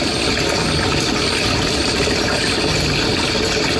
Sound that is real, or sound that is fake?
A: real